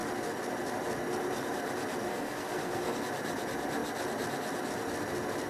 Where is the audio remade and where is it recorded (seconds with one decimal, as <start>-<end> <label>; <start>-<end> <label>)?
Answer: 0.0-2.1 recorded; 2.1-3.0 remade; 3.0-5.5 recorded